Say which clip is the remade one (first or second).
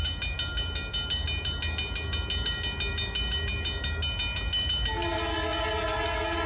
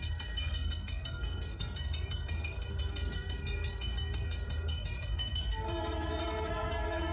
second